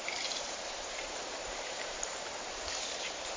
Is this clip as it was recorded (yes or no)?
no